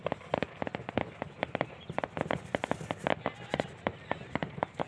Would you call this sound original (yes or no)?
yes